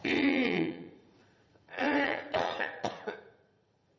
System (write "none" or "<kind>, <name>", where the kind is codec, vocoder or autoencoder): vocoder, Vocos